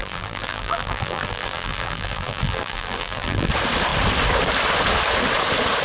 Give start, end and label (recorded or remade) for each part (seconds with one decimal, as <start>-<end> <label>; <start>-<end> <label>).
0.0-3.5 remade; 3.5-5.8 recorded